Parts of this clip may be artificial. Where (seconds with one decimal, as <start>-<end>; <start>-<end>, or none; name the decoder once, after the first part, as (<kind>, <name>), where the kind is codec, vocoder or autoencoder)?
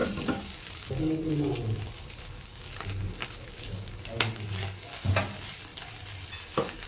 0.0-1.3 (codec, DAC); 1.9-5.1